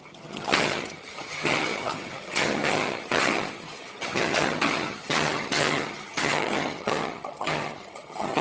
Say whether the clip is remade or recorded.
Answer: remade